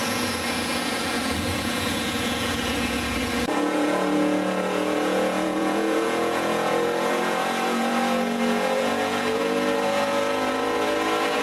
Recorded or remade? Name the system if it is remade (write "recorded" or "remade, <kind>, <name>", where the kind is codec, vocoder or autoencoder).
remade, vocoder, Vocos